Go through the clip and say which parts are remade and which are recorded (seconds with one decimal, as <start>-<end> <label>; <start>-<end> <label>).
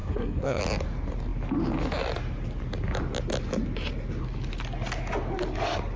0.0-0.6 remade; 0.6-6.0 recorded